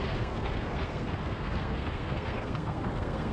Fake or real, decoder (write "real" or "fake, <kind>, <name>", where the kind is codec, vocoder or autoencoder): fake, codec, SNAC